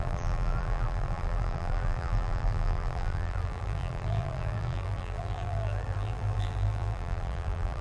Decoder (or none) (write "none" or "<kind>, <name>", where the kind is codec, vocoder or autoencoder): vocoder, BigVGAN v2